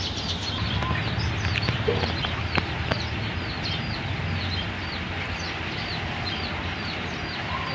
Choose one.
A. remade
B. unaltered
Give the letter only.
A